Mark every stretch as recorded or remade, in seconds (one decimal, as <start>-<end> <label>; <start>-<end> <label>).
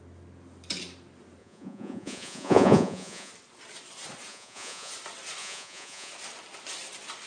0.0-1.4 recorded; 1.4-3.3 remade; 3.3-4.3 recorded; 4.3-4.9 remade; 4.9-5.4 recorded; 5.4-6.1 remade; 6.1-7.3 recorded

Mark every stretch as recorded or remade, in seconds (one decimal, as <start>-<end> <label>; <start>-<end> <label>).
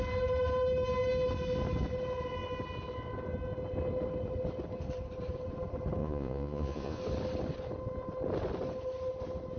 0.0-6.0 recorded; 6.0-7.0 remade; 7.0-9.6 recorded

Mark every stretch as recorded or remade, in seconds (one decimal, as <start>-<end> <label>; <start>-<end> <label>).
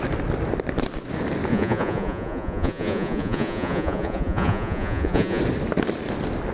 0.0-1.5 recorded; 1.5-5.4 remade; 5.4-6.5 recorded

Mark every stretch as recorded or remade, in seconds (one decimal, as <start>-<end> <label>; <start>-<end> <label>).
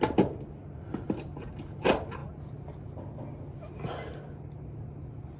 0.0-5.4 recorded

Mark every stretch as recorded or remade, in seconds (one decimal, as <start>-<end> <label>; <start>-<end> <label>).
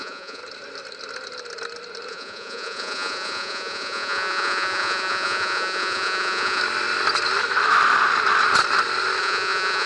0.0-0.4 remade; 0.4-2.1 recorded; 2.1-6.6 remade; 6.6-9.2 recorded; 9.2-9.9 remade